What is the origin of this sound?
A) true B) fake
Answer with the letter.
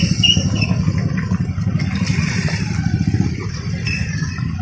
A